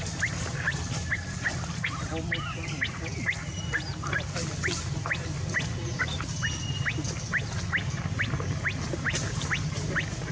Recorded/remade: recorded